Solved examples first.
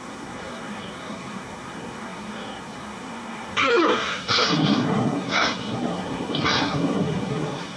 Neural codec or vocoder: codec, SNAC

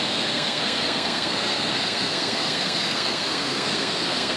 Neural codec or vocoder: codec, SNAC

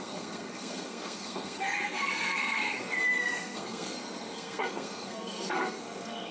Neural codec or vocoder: codec, SNAC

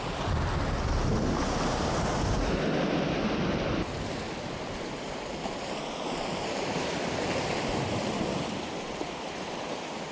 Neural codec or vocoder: none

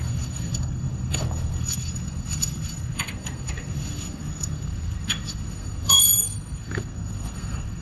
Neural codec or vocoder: codec, SNAC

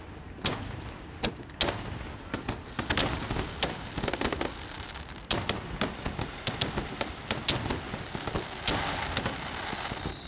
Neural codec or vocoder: none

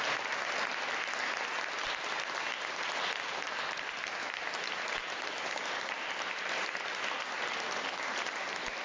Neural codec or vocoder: none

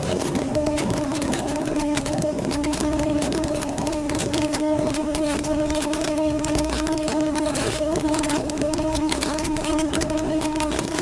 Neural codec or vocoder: codec, SNAC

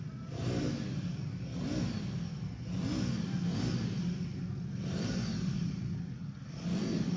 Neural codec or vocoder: none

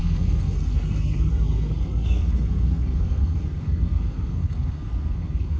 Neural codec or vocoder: codec, SNAC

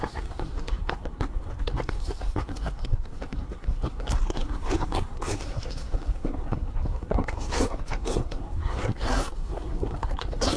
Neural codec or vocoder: codec, SNAC